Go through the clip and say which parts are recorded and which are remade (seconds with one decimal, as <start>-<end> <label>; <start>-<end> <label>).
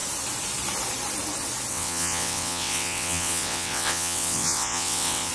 0.0-1.7 recorded; 1.7-5.3 remade